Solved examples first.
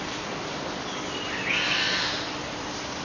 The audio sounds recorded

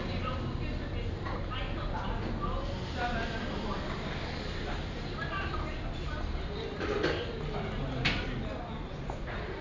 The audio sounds recorded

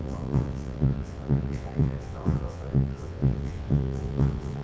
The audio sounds remade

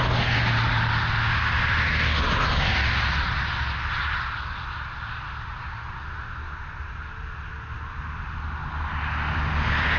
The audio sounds recorded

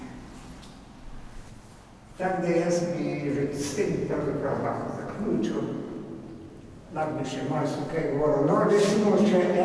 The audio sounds recorded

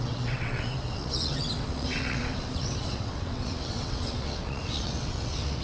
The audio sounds remade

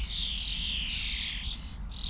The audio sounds recorded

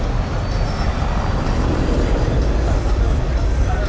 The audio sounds recorded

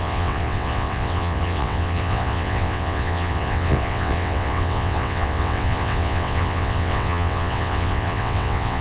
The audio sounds remade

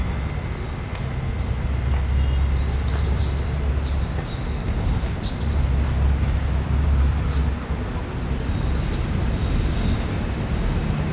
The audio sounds recorded